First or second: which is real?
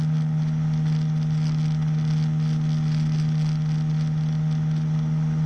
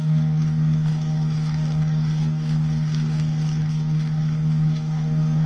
first